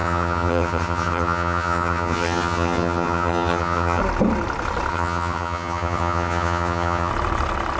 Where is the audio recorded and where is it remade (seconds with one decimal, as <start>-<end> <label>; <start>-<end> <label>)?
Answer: 0.0-4.0 remade; 4.0-4.9 recorded; 4.9-7.1 remade; 7.1-7.8 recorded